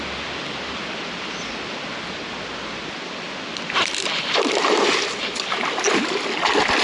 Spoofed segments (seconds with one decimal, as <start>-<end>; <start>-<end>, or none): 0.8-4.9